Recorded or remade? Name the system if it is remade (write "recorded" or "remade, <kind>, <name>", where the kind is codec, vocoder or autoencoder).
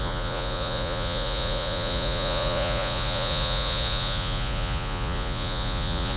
remade, vocoder, Vocos